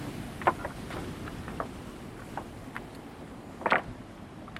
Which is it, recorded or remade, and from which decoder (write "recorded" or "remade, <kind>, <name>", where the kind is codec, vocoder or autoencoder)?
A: recorded